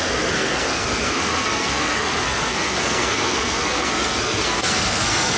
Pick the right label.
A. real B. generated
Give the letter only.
B